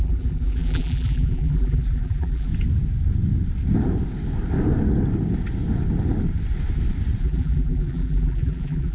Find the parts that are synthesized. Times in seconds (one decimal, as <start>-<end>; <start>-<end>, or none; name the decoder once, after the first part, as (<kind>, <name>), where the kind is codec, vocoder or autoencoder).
0.0-2.5 (vocoder, BigVGAN v2); 7.2-8.9